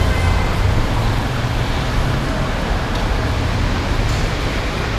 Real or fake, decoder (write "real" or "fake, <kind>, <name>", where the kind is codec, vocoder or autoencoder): real